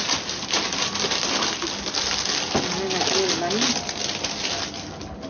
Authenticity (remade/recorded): recorded